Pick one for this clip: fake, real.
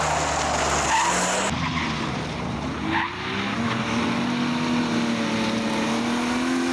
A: real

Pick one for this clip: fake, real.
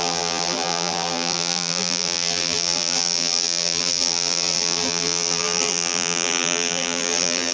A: fake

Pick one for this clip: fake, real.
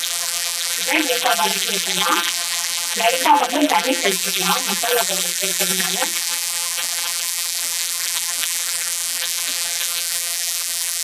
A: fake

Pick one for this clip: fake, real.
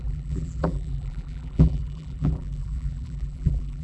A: fake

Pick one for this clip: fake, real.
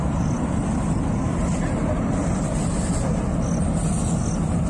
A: real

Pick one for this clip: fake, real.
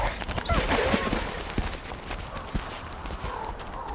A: real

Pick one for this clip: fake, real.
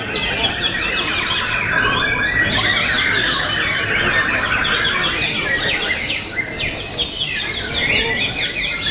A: real